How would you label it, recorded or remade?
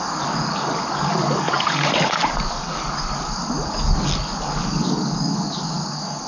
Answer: remade